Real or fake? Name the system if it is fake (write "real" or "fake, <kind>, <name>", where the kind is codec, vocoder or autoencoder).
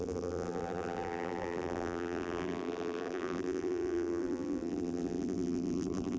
fake, vocoder, BigVGAN v2